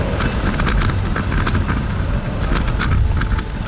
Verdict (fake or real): real